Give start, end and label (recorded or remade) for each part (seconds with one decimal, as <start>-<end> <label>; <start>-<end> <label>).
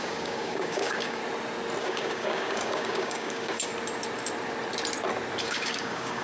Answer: 0.0-1.2 remade; 1.2-1.8 recorded; 1.8-3.7 remade; 3.7-5.4 recorded; 5.4-6.2 remade